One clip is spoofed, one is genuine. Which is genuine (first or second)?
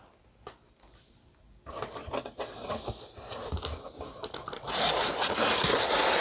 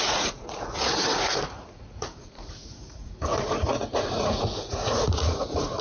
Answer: first